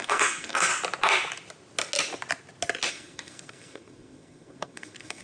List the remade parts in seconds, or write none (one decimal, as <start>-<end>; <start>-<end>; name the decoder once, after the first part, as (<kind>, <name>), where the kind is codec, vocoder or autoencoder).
0.0-0.7 (codec, SNAC); 2.9-5.2